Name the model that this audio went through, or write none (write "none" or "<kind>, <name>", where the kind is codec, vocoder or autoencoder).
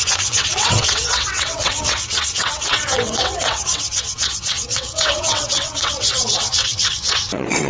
vocoder, WaveNeXt